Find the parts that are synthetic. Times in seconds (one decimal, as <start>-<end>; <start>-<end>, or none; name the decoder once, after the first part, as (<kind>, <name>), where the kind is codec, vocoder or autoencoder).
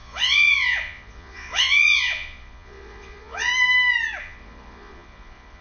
0.0-3.5 (vocoder, Vocos); 4.2-5.6